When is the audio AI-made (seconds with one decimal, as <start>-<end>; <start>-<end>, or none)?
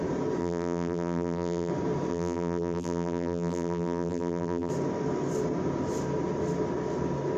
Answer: 0.4-1.7; 2.1-4.7